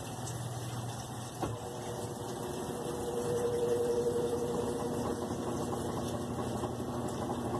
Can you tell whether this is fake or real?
real